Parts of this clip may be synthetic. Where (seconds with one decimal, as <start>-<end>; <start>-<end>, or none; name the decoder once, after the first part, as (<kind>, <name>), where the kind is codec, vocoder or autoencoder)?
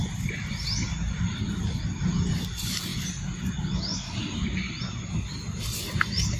none